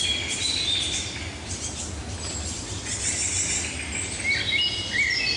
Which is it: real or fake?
real